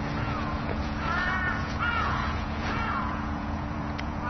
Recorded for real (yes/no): no